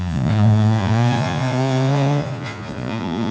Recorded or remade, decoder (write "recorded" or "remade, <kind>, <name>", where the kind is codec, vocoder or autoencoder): remade, vocoder, Vocos